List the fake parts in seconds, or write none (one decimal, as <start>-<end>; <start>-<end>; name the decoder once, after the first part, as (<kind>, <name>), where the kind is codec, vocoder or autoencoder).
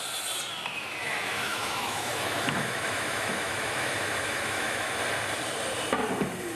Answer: 1.0-4.9 (autoencoder, DAC-VAE)